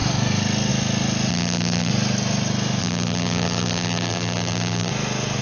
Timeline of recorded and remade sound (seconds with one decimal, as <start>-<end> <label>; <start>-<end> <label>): 0.0-1.3 recorded; 1.3-1.9 remade; 1.9-2.8 recorded; 2.8-4.9 remade; 4.9-5.4 recorded